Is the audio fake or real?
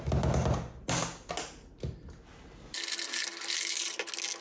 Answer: real